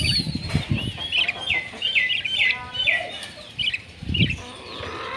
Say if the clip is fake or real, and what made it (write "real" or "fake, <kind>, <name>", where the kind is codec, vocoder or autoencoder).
real